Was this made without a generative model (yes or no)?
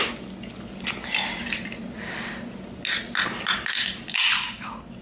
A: yes